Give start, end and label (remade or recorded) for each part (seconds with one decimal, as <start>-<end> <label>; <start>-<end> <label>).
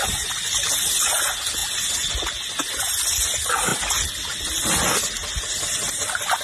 0.0-6.4 recorded